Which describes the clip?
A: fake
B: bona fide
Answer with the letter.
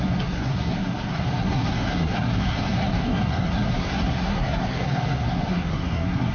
A